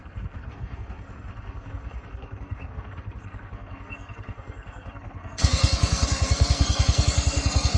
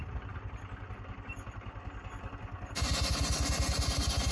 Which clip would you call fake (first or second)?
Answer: first